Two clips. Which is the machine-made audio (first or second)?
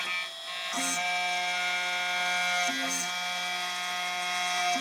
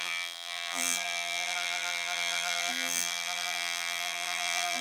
second